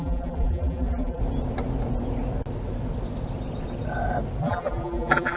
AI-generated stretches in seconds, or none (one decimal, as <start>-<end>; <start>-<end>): 0.0-1.2; 4.4-5.4